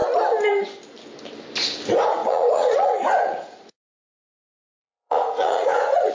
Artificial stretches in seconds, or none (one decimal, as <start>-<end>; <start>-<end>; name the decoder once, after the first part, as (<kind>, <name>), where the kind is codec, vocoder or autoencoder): 2.2-6.1 (vocoder, Vocos)